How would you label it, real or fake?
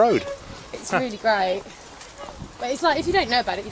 real